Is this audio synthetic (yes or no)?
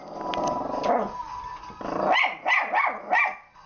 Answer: no